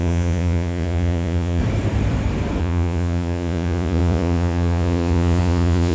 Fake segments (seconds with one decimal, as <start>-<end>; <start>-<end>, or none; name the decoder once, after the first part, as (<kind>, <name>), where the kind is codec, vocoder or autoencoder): 0.0-1.6 (vocoder, Vocos); 2.6-5.9